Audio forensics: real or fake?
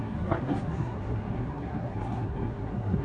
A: fake